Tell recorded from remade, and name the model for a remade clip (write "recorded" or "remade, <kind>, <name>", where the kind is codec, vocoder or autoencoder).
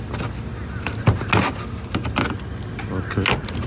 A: recorded